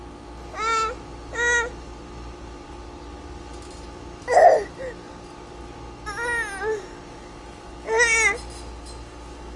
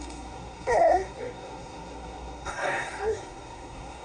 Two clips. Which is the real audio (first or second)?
first